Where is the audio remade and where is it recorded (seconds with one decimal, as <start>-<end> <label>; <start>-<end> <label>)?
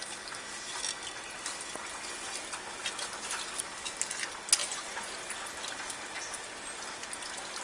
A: 0.0-4.6 recorded; 4.6-5.1 remade; 5.1-7.6 recorded